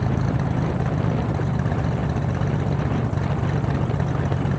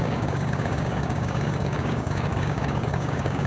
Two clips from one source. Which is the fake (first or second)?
second